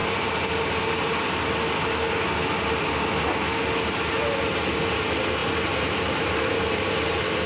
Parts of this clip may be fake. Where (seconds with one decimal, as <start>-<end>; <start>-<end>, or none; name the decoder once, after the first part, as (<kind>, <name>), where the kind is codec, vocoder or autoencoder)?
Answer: none